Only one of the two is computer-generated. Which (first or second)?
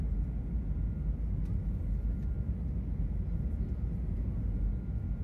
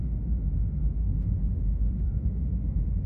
second